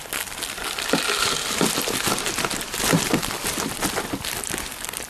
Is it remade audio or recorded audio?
remade